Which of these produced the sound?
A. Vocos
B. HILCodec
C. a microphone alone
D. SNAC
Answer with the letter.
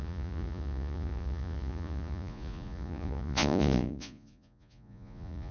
A